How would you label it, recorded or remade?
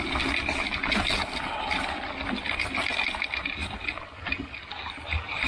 recorded